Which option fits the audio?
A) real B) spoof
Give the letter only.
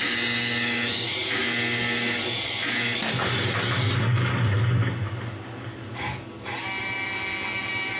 A